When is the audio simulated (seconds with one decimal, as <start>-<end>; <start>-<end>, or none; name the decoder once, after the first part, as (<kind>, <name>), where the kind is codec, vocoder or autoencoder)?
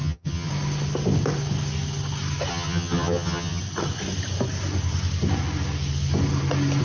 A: 0.0-0.5 (vocoder, HiFi-GAN); 2.5-3.6